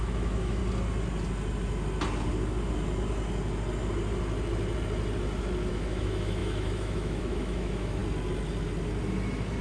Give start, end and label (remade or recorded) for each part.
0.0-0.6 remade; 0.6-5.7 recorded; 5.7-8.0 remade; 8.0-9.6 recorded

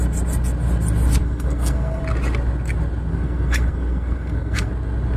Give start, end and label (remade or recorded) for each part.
0.0-1.2 recorded; 1.2-2.0 remade; 2.0-3.1 recorded; 3.1-4.7 remade; 4.7-5.2 recorded

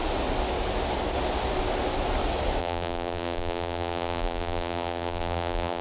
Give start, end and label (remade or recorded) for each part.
0.0-2.6 recorded; 2.6-5.8 remade

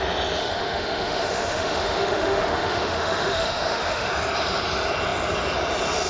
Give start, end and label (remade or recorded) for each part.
0.0-0.4 recorded; 0.4-4.1 remade; 4.1-6.1 recorded

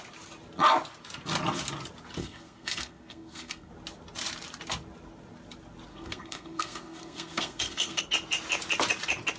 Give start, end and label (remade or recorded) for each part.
0.0-2.2 recorded; 2.2-3.7 remade; 3.7-5.9 recorded; 5.9-8.0 remade; 8.0-9.4 recorded